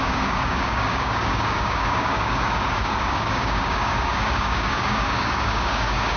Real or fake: fake